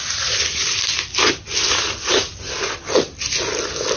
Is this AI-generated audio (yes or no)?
no